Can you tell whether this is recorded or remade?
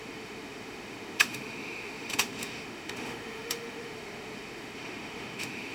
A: remade